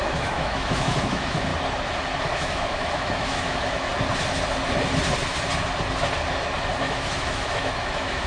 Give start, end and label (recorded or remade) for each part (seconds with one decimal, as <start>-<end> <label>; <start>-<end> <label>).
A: 0.0-1.5 remade; 1.5-2.3 recorded; 2.3-3.9 remade; 3.9-6.8 recorded; 6.8-8.3 remade